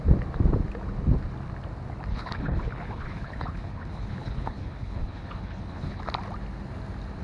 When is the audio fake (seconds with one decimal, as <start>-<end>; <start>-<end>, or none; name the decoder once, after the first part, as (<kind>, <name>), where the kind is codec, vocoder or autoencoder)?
2.1-6.0 (codec, HILCodec)